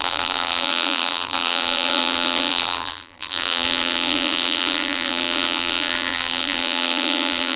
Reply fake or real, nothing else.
fake